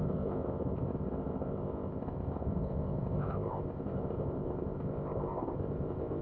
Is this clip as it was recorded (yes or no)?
no